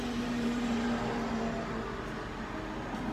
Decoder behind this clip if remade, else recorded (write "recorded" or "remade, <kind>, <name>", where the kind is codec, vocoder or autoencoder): recorded